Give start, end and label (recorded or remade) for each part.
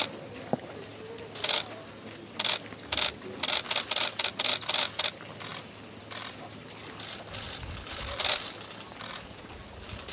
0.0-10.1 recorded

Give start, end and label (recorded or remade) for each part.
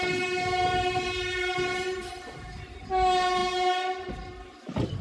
0.0-5.0 recorded